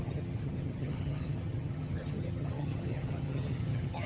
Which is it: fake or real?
fake